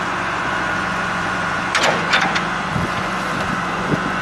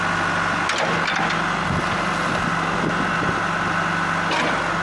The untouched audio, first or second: second